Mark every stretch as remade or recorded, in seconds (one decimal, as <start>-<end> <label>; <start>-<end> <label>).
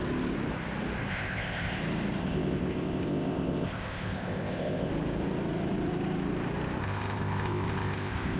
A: 0.0-1.1 recorded; 1.1-1.8 remade; 1.8-2.2 recorded; 2.2-4.9 remade; 4.9-6.8 recorded; 6.8-8.4 remade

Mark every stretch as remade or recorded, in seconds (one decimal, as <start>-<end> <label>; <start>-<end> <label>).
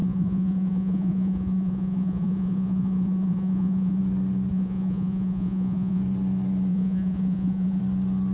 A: 0.0-4.0 remade; 4.0-4.5 recorded; 4.5-6.0 remade; 6.0-6.7 recorded; 6.7-7.8 remade; 7.8-8.3 recorded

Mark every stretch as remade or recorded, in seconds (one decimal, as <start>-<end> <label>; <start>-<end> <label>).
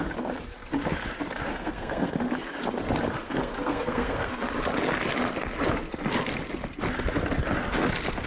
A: 0.0-1.5 recorded; 1.5-2.1 remade; 2.1-3.2 recorded; 3.2-4.3 remade; 4.3-8.3 recorded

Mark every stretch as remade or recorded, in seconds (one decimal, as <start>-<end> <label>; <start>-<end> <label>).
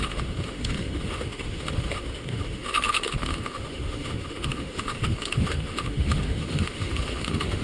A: 0.0-7.6 remade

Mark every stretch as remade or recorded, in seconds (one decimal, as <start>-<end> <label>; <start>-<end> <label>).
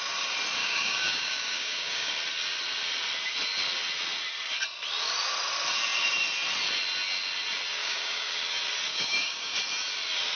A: 0.0-0.6 recorded; 0.6-2.1 remade; 2.1-7.8 recorded; 7.8-8.4 remade; 8.4-8.9 recorded; 8.9-9.6 remade; 9.6-10.3 recorded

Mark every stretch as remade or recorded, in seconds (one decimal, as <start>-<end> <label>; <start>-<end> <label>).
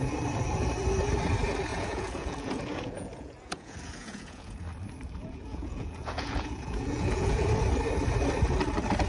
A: 0.0-1.7 recorded; 1.7-4.6 remade; 4.6-5.2 recorded; 5.2-7.5 remade; 7.5-9.1 recorded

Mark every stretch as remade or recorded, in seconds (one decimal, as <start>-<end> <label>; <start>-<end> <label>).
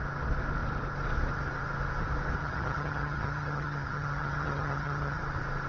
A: 0.0-2.4 recorded; 2.4-5.2 remade; 5.2-5.7 recorded